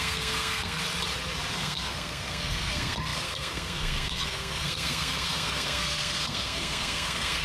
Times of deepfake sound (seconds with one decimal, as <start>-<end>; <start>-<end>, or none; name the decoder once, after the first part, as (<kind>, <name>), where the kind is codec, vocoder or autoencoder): 0.0-0.8 (codec, SNAC); 1.5-7.4

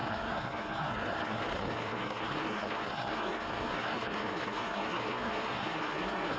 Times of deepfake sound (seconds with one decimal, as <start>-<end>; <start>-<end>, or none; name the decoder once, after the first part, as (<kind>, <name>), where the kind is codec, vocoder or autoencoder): 0.0-6.4 (codec, SNAC)

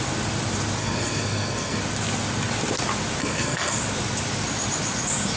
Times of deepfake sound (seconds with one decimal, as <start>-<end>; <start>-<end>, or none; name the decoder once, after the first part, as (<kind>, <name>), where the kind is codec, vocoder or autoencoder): 0.8-1.8 (codec, SNAC); 3.2-3.8

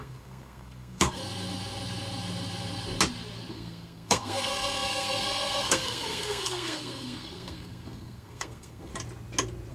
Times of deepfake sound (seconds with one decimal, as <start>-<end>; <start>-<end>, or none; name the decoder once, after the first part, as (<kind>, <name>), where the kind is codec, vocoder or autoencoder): 0.0-1.2 (codec, SNAC); 3.5-8.9

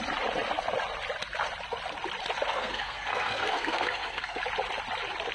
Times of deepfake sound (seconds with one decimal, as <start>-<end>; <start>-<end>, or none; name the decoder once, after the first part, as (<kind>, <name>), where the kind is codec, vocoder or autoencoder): 2.5-4.4 (codec, SNAC)